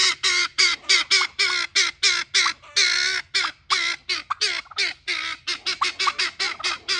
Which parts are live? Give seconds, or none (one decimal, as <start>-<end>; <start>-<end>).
1.5-7.0